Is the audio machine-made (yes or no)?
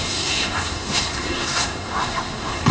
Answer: yes